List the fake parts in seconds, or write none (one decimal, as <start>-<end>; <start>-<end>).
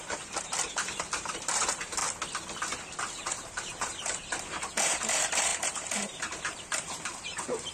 0.0-2.0; 3.2-7.7